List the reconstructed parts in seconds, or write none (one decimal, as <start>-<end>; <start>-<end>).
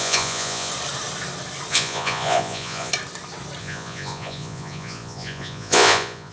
0.0-0.7; 1.7-2.9; 3.6-6.3